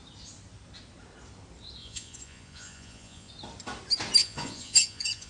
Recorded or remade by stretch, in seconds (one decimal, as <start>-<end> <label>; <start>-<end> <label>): 0.0-1.8 recorded; 1.8-3.3 remade; 3.3-4.2 recorded; 4.2-5.3 remade